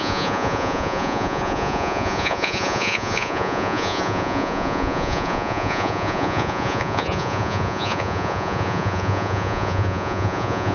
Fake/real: fake